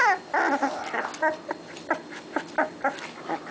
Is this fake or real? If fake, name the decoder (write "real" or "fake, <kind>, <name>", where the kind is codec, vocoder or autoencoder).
real